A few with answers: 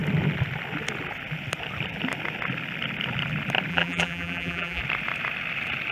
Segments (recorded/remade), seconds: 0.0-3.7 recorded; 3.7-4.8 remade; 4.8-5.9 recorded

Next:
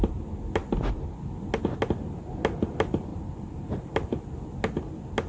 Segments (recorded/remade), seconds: 0.0-3.1 recorded; 3.1-4.2 remade; 4.2-5.3 recorded

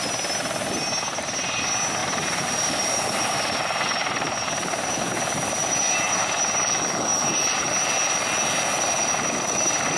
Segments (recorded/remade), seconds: 0.0-2.0 recorded; 2.0-5.0 remade; 5.0-5.6 recorded; 5.6-6.2 remade; 6.2-7.1 recorded; 7.1-7.7 remade; 7.7-10.0 recorded

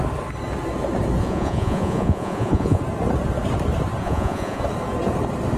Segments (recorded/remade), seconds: 0.0-1.2 recorded; 1.2-2.8 remade; 2.8-4.0 recorded; 4.0-4.6 remade; 4.6-5.6 recorded